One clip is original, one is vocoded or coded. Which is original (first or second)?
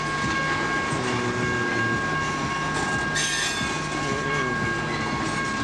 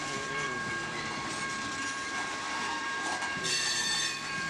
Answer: first